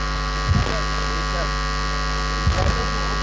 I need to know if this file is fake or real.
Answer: real